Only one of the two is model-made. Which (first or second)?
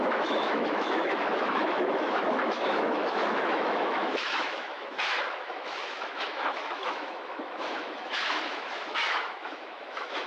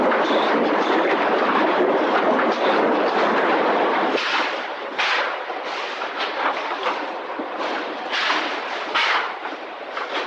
first